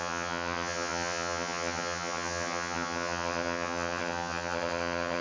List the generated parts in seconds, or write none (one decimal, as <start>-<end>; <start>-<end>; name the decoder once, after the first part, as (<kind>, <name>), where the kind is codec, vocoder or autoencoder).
0.0-5.2 (vocoder, HiFi-GAN)